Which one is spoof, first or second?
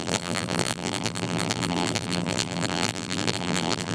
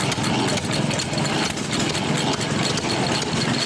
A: first